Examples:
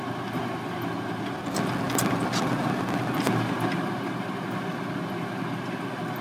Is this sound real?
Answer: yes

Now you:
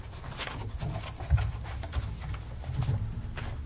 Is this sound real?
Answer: yes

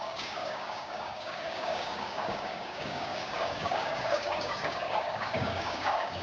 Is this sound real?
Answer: no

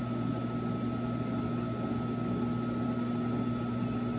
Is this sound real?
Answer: yes